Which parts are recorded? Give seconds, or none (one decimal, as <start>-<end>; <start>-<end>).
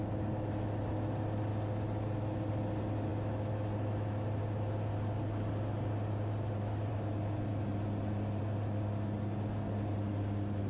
0.0-10.7